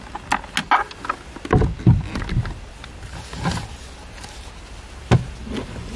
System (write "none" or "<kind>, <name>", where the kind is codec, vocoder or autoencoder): none